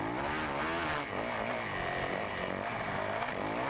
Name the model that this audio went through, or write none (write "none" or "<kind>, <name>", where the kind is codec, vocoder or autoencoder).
none